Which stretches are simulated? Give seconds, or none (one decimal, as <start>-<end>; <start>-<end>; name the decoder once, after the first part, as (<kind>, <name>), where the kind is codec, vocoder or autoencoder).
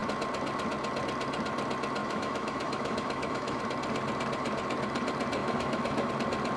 2.0-3.6 (autoencoder, DAC-VAE); 5.4-6.1